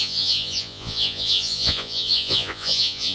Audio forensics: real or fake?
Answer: fake